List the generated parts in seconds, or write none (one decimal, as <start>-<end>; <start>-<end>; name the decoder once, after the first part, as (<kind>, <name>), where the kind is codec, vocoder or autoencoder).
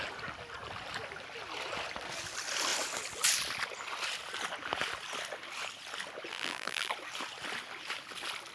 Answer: 6.3-6.9 (vocoder, BigVGAN v2)